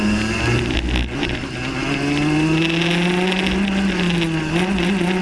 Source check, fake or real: real